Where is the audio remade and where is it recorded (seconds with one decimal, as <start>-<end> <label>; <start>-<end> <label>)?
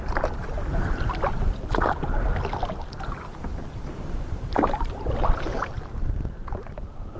0.0-0.7 recorded; 0.7-1.3 remade; 1.3-2.5 recorded; 2.5-6.8 remade; 6.8-7.2 recorded